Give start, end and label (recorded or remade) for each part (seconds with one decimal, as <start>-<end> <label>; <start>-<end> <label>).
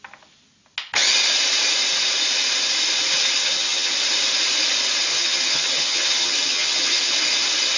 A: 0.0-3.4 recorded; 3.4-3.9 remade; 3.9-5.1 recorded; 5.1-7.1 remade; 7.1-7.8 recorded